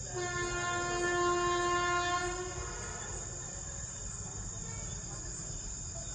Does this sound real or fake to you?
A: real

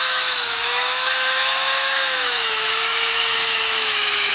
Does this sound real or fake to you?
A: fake